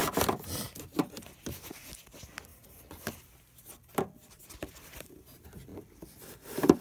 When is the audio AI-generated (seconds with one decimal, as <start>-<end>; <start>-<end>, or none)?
none